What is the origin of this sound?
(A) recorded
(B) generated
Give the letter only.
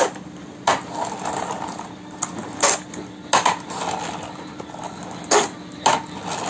A